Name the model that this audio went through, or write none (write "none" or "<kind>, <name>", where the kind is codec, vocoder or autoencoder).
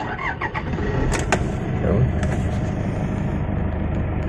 none